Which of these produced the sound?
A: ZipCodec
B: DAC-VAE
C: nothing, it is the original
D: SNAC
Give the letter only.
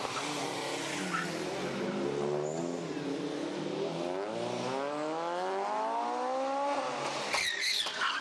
C